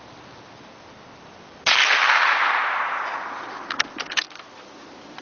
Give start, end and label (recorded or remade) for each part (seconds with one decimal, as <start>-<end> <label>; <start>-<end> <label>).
0.0-5.2 recorded